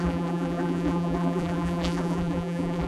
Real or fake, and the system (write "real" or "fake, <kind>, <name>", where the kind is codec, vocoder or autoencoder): fake, vocoder, BigVGAN v2